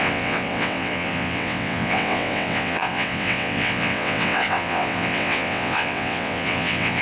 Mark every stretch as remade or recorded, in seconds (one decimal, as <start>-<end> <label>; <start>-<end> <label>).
0.0-7.0 remade